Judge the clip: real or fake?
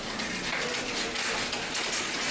real